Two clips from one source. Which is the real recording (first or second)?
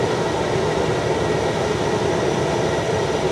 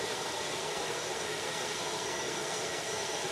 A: first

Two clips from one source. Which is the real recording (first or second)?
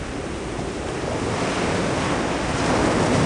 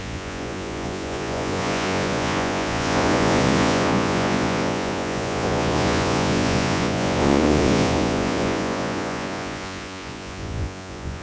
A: first